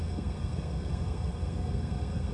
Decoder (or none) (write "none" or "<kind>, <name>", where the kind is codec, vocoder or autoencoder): codec, SNAC